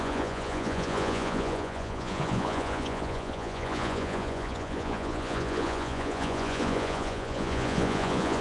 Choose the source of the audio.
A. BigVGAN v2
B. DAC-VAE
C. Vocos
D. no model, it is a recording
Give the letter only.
C